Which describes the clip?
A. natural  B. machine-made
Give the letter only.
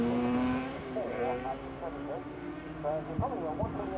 A